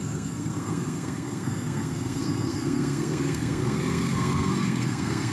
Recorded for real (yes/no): no